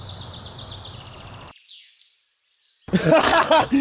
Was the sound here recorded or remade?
recorded